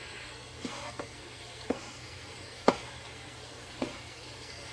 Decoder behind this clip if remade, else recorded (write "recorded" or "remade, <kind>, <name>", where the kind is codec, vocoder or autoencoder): remade, codec, SNAC